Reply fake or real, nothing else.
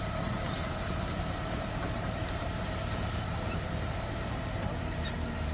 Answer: fake